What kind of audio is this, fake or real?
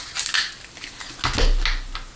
real